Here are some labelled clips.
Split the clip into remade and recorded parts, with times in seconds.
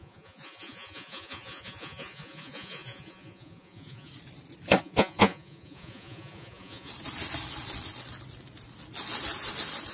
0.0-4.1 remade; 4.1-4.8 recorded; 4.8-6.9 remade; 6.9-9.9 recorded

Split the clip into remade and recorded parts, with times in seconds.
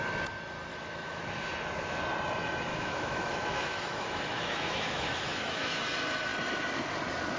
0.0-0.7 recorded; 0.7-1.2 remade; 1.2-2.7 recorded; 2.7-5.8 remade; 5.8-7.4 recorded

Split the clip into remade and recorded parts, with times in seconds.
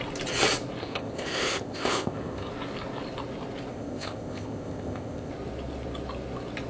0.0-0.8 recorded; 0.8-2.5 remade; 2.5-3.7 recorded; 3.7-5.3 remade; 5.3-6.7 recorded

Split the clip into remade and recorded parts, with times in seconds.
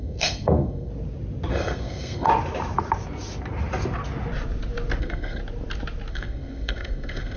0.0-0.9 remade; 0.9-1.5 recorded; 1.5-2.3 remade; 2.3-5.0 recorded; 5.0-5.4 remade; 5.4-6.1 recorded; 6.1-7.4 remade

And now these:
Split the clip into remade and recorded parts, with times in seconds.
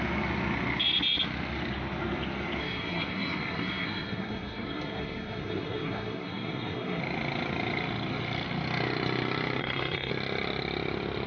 0.0-2.6 recorded; 2.6-7.0 remade; 7.0-9.6 recorded; 9.6-10.1 remade; 10.1-11.3 recorded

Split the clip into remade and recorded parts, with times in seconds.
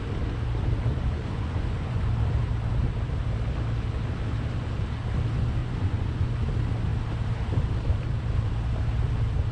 0.0-0.9 recorded; 0.9-2.1 remade; 2.1-5.6 recorded; 5.6-6.5 remade; 6.5-9.5 recorded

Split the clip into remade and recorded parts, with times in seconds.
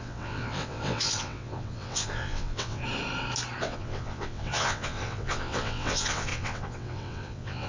0.0-2.8 remade; 2.8-3.6 recorded; 3.6-7.7 remade